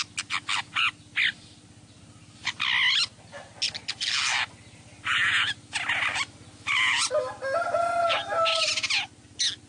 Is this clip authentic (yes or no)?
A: yes